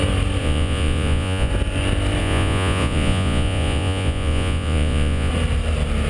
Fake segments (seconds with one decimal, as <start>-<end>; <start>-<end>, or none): 0.4-1.5; 2.2-5.3

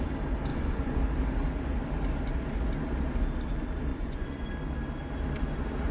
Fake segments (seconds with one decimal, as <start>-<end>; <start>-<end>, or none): 0.5-1.0; 3.9-4.5

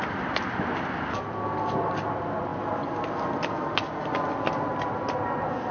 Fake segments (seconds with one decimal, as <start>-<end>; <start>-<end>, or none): none

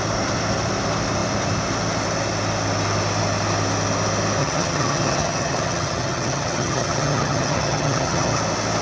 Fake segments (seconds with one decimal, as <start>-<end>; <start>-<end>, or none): 4.4-8.4

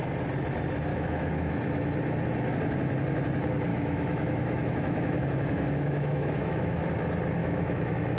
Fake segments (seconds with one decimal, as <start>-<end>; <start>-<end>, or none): 0.9-1.5; 3.7-6.8; 7.4-8.2

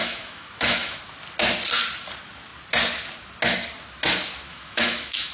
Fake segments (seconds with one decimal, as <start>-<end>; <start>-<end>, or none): 0.0-1.0; 4.5-5.3

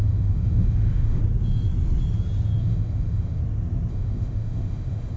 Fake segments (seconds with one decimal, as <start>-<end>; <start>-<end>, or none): 0.0-1.2; 2.6-3.4; 3.9-5.2